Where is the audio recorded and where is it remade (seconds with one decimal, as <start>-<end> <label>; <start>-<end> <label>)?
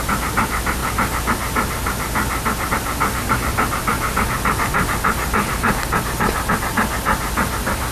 0.0-7.9 recorded